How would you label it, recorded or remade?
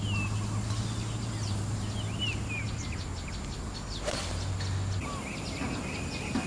recorded